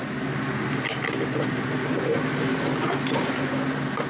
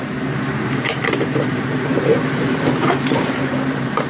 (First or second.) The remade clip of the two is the second